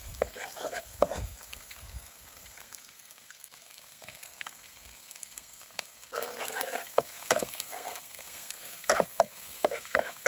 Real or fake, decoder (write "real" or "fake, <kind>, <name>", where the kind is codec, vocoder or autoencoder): fake, codec, SNAC